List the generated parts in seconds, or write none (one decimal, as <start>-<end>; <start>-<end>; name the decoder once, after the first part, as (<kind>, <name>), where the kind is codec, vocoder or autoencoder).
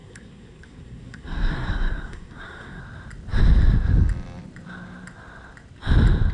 0.0-2.8 (codec, SNAC)